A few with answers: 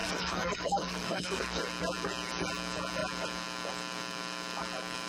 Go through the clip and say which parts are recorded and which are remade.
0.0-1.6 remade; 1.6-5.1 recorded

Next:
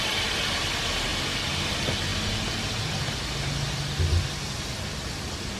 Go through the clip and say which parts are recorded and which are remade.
0.0-5.6 recorded

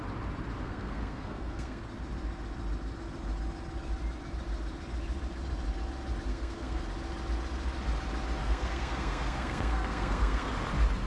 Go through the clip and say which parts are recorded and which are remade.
0.0-0.6 recorded; 0.6-1.8 remade; 1.8-6.3 recorded; 6.3-6.8 remade; 6.8-8.4 recorded; 8.4-10.5 remade; 10.5-11.1 recorded

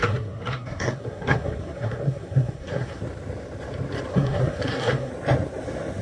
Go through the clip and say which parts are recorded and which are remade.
0.0-3.0 remade; 3.0-4.1 recorded; 4.1-5.1 remade; 5.1-6.0 recorded

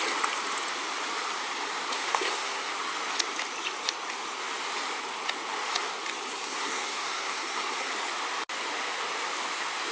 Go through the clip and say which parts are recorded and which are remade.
0.0-1.9 recorded; 1.9-2.7 remade; 2.7-6.3 recorded; 6.3-7.9 remade; 7.9-9.9 recorded